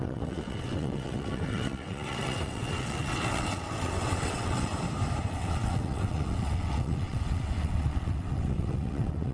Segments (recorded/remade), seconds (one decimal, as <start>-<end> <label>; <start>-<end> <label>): 0.0-4.7 remade; 4.7-5.3 recorded; 5.3-9.3 remade